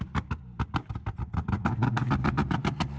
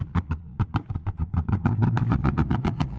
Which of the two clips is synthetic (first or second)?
second